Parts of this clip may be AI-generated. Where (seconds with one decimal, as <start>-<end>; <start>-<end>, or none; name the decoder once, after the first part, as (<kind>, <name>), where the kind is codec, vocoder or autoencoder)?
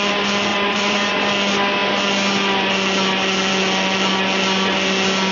0.5-1.2 (vocoder, Vocos)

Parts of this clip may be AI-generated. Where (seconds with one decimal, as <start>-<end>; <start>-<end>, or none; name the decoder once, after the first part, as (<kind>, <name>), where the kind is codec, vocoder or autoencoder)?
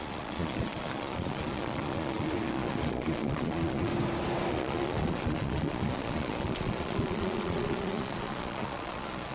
0.0-3.9 (vocoder, Vocos); 4.5-9.3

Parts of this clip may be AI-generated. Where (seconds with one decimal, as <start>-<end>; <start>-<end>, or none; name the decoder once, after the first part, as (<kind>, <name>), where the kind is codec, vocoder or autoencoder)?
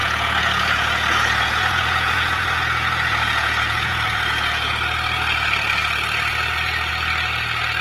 0.0-4.7 (vocoder, Vocos)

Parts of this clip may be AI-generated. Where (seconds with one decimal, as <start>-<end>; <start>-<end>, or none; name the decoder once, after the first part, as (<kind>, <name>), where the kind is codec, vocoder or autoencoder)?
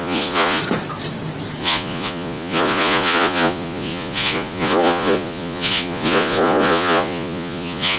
0.0-0.6 (vocoder, Vocos); 1.6-8.0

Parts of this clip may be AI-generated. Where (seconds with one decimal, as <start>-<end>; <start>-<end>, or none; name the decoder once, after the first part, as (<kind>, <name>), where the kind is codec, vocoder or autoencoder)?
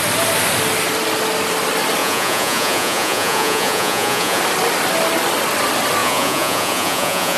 2.0-4.4 (vocoder, Vocos); 6.0-7.4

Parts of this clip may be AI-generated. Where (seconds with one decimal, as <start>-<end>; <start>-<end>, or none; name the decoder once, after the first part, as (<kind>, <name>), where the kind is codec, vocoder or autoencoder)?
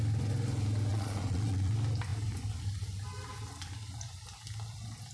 0.9-1.7 (vocoder, Vocos)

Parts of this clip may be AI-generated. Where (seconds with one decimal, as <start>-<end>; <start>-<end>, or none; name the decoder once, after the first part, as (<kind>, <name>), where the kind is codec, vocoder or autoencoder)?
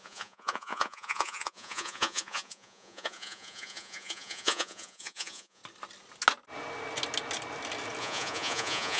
0.0-5.6 (vocoder, Vocos); 8.0-9.0